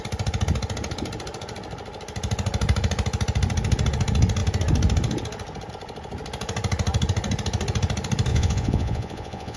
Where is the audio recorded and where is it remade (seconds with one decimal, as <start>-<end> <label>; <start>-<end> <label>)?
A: 0.0-8.3 recorded; 8.3-9.6 remade